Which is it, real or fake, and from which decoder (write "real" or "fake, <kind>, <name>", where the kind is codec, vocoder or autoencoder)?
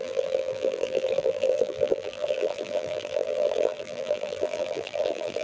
fake, vocoder, BigVGAN v2